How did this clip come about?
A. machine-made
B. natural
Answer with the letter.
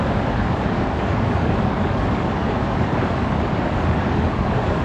A